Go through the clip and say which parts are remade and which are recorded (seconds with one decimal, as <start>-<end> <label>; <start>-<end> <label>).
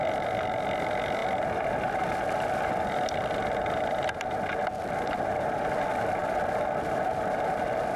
0.0-8.0 recorded